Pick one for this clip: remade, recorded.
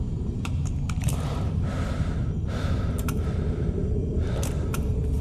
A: remade